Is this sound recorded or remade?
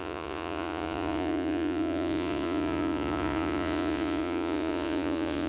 remade